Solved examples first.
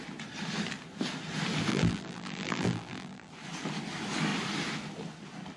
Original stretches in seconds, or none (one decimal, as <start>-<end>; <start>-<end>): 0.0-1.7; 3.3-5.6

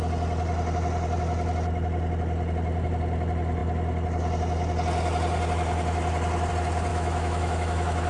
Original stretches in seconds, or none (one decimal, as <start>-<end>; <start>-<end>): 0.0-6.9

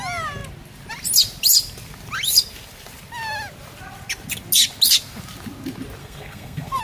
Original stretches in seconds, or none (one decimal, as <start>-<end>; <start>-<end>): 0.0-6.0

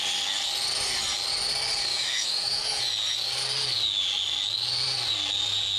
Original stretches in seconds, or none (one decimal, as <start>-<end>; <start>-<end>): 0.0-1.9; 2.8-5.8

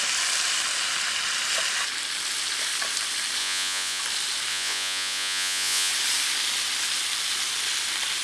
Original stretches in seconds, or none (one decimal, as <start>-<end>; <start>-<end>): 0.0-3.4; 4.0-4.5; 5.9-8.2